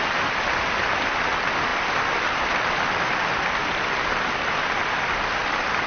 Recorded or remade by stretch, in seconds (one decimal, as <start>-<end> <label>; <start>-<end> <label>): 0.0-1.7 recorded; 1.7-3.6 remade; 3.6-5.4 recorded; 5.4-5.9 remade

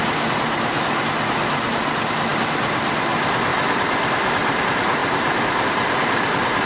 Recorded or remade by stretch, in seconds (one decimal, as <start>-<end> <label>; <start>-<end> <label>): 0.0-6.7 recorded

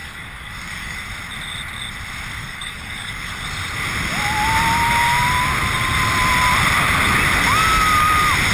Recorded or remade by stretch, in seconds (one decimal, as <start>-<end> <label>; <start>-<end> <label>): 0.0-1.0 remade; 1.0-2.4 recorded; 2.4-3.3 remade; 3.3-8.5 recorded

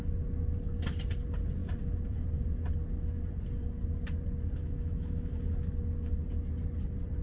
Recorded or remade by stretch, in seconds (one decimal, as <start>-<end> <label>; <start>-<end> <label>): 0.0-4.6 recorded; 4.6-5.4 remade; 5.4-7.2 recorded

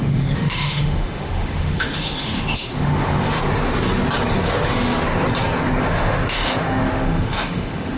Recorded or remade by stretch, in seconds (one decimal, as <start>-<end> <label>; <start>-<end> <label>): 0.0-3.4 remade; 3.4-4.5 recorded; 4.5-5.1 remade; 5.1-5.8 recorded; 5.8-8.0 remade

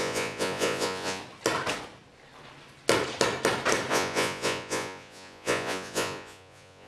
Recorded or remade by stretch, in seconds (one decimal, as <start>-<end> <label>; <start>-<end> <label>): 0.0-1.2 remade; 1.2-3.9 recorded; 3.9-6.9 remade